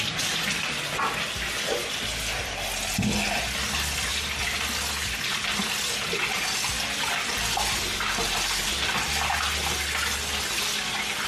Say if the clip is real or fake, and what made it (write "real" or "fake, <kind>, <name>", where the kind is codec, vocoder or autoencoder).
real